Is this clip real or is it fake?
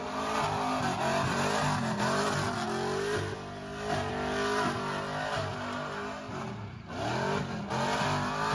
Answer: real